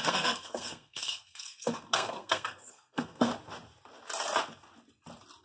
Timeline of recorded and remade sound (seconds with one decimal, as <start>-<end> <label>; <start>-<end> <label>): 0.0-3.3 remade; 3.3-5.4 recorded